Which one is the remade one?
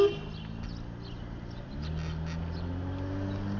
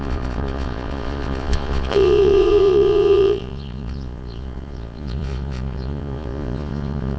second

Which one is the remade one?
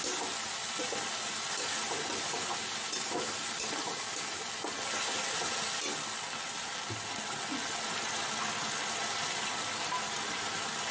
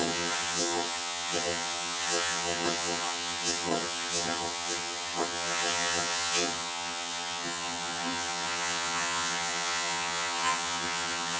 second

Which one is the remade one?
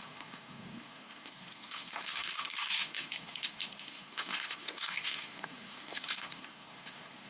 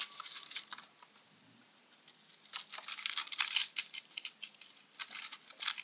first